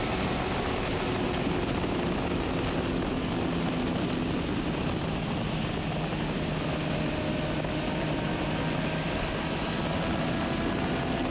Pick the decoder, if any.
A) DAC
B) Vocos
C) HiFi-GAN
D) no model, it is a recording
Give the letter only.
D